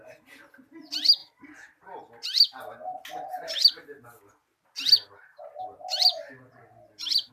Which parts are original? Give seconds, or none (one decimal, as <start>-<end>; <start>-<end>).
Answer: 0.0-7.3